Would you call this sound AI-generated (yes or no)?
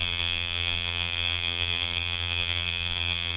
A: yes